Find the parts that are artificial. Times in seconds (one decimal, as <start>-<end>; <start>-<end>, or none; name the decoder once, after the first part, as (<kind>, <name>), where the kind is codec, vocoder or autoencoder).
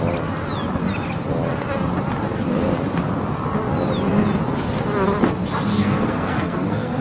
5.7-7.0 (codec, SNAC)